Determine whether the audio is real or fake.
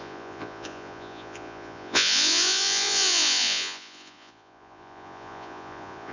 fake